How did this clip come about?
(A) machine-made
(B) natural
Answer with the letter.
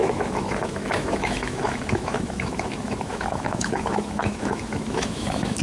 A